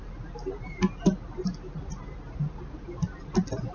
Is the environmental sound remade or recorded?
recorded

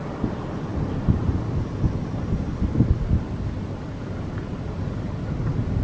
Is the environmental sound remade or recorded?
recorded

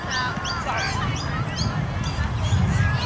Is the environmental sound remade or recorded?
recorded